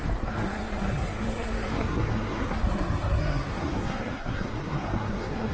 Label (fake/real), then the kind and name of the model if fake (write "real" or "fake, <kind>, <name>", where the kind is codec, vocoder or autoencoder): fake, codec, SNAC